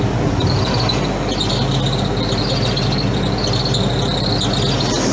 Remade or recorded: recorded